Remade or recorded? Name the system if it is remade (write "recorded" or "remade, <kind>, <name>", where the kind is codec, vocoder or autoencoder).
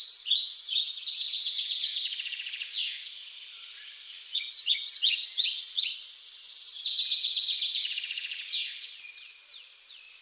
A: remade, vocoder, Vocos